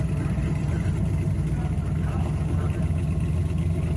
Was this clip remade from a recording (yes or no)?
no